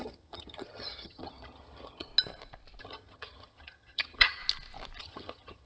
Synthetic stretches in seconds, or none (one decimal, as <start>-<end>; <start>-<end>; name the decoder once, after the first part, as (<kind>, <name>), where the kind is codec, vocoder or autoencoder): 0.0-2.1 (vocoder, HiFi-GAN); 2.8-4.4; 5.0-5.7

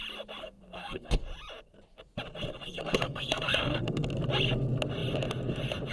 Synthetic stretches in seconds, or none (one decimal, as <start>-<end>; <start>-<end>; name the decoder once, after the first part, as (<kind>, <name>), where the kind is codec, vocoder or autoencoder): 0.4-1.2 (codec, SNAC); 2.5-4.1

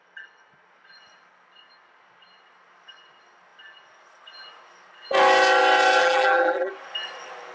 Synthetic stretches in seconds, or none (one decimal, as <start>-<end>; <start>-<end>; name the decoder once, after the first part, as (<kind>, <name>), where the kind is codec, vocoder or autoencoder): 6.0-6.7 (vocoder, BigVGAN v2)

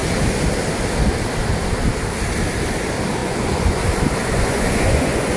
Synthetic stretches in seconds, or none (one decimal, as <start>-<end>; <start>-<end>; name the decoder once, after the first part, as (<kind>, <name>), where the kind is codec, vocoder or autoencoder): 3.2-3.8 (vocoder, Vocos); 4.2-5.4

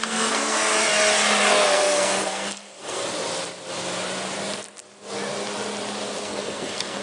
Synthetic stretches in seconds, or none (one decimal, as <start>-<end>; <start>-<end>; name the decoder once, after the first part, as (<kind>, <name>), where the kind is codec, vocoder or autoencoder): 0.0-0.7 (codec, SNAC); 1.5-3.0; 6.2-7.0